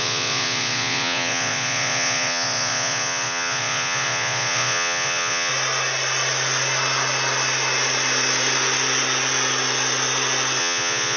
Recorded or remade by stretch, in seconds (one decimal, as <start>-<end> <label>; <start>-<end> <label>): 0.0-5.5 remade; 5.5-10.6 recorded; 10.6-11.2 remade